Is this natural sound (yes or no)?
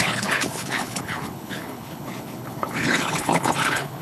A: no